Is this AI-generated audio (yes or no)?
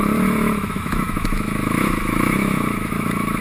yes